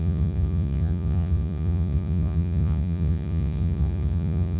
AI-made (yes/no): yes